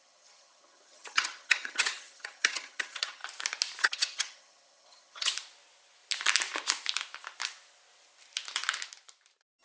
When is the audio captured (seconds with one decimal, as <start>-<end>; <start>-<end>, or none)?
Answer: 3.2-3.8; 5.3-9.6